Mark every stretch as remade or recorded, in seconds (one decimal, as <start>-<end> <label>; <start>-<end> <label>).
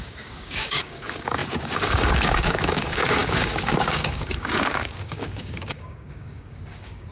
0.0-7.1 remade